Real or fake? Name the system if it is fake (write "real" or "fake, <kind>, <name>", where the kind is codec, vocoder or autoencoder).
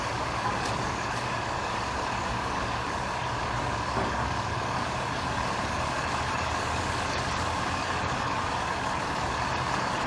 fake, codec, DAC